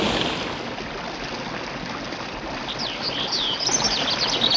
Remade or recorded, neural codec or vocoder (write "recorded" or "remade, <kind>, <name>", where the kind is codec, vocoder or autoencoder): recorded